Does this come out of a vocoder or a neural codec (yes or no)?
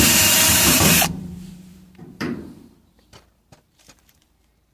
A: yes